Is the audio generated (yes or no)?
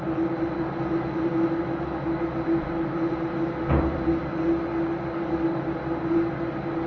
no